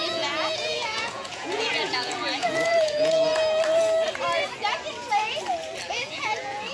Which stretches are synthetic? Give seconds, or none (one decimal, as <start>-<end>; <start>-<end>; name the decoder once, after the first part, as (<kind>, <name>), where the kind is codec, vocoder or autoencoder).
0.0-3.3 (vocoder, Vocos); 5.9-6.7